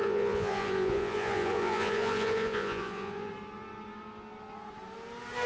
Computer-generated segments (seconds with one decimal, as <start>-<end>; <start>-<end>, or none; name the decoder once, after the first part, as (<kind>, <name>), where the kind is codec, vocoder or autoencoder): 0.0-3.3 (vocoder, Vocos)